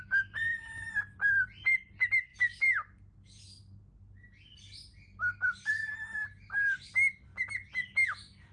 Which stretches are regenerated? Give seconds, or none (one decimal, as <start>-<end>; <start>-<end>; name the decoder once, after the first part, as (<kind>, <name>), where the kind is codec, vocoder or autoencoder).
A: none